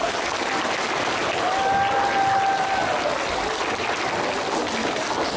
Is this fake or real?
real